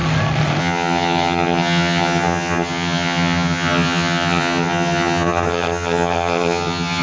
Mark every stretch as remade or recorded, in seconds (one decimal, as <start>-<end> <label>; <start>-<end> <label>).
0.0-0.6 recorded; 0.6-7.0 remade